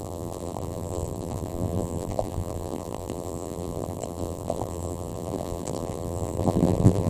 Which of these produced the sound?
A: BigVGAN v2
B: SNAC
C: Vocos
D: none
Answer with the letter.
A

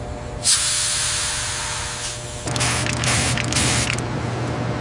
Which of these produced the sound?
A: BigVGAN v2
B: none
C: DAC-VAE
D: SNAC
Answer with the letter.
B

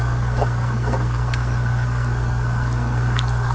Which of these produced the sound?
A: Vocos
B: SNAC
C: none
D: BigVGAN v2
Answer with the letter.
B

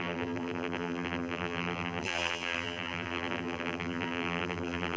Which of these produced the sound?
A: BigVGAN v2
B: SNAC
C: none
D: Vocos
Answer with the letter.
A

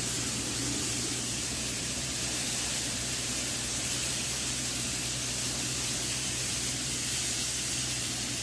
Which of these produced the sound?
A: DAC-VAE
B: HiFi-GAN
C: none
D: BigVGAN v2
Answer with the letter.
D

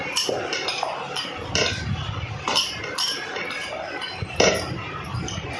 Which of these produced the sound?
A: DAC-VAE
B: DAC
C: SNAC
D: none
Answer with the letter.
D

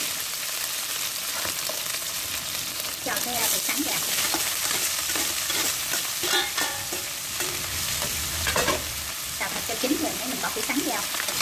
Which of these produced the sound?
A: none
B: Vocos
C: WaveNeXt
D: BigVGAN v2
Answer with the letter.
D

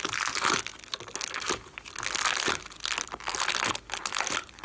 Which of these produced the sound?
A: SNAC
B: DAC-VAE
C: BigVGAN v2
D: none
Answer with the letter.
D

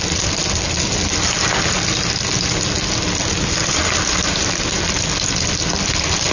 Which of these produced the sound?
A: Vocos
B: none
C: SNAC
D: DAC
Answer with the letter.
B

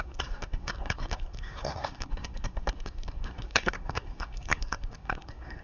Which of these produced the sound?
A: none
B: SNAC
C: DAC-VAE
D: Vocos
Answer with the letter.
B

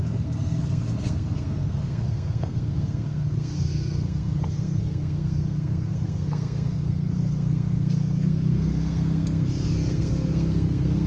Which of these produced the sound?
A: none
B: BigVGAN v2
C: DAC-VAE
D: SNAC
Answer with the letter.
D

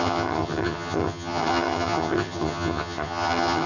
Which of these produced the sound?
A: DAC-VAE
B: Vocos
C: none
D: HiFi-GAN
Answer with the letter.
D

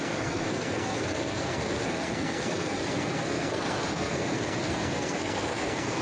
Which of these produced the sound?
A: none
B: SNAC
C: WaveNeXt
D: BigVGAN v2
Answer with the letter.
B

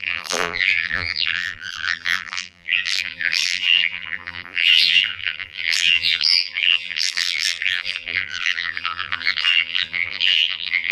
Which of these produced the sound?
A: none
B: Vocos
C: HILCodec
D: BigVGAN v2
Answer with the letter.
D